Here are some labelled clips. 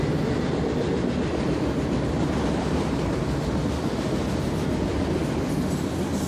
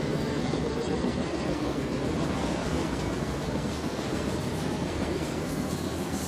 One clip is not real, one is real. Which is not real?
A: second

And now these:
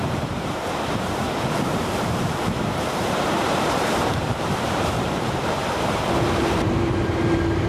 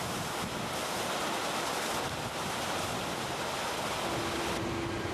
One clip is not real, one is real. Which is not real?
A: first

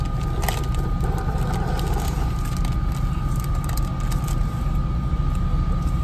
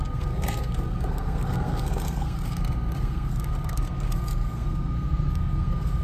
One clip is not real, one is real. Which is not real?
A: second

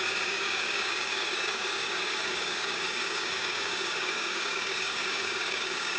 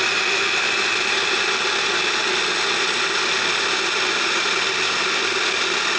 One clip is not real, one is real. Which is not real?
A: first